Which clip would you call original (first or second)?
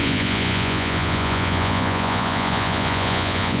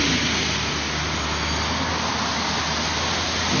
second